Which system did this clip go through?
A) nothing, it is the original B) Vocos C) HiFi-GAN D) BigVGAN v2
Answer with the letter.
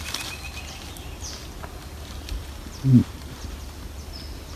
A